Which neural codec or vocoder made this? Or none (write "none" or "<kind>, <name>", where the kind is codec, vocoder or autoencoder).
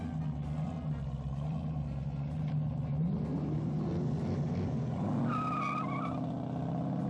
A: none